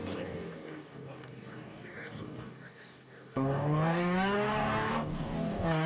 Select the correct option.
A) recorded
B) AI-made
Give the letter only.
B